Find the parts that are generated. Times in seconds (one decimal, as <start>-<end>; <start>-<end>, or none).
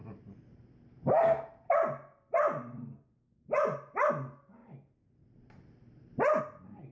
0.0-4.1; 4.6-6.4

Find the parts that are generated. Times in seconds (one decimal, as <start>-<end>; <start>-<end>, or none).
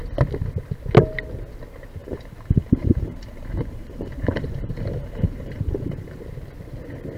2.0-6.2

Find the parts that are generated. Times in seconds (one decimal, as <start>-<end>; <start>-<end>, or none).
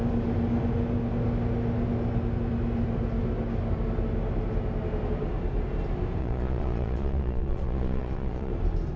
6.2-8.5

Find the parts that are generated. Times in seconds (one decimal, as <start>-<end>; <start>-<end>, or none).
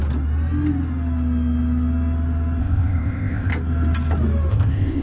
2.6-3.5; 4.5-5.0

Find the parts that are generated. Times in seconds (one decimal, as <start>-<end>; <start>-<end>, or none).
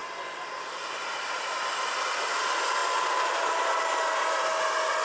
none